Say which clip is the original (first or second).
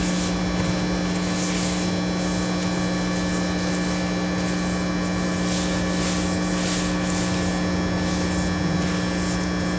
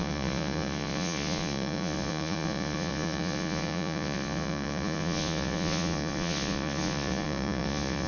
first